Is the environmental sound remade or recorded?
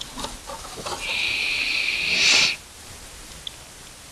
recorded